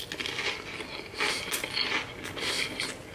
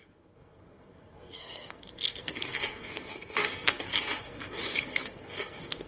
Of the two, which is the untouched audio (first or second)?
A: first